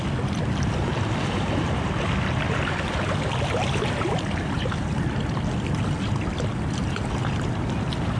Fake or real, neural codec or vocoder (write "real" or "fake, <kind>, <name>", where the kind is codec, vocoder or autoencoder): real